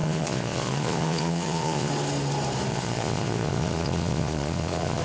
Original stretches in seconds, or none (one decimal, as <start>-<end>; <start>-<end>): 1.9-2.7